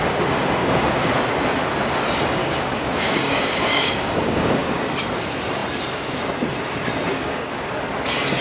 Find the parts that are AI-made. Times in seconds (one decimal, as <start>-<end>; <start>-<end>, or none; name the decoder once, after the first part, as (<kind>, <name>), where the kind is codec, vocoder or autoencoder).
0.6-1.2 (codec, DAC); 2.4-4.8; 7.1-7.7